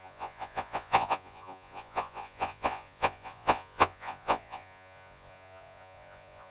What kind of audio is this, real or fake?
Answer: fake